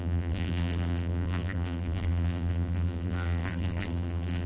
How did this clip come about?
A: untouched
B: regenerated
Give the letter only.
B